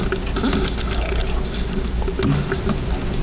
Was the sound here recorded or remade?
recorded